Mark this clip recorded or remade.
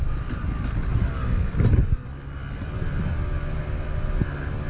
recorded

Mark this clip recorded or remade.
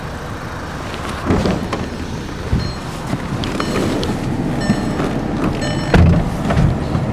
recorded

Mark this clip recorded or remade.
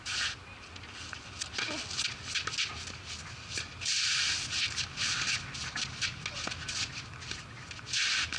recorded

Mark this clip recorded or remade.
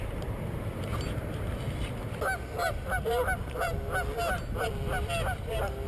recorded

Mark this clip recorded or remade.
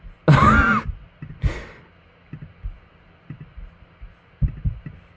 recorded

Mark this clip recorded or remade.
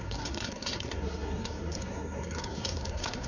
remade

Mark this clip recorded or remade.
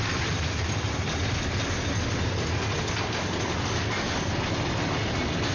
recorded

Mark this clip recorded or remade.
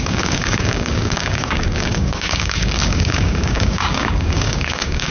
remade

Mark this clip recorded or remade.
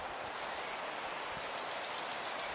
recorded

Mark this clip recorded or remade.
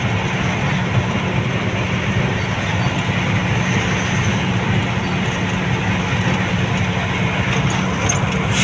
recorded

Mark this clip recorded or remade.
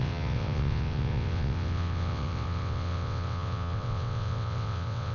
remade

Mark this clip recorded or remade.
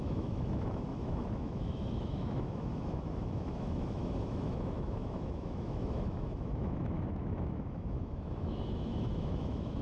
remade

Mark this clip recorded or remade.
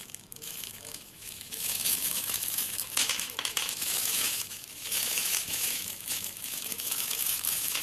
remade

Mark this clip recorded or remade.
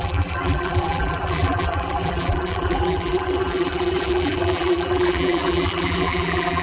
remade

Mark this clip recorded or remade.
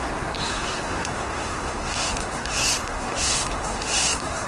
remade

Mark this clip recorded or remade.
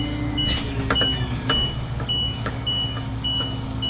remade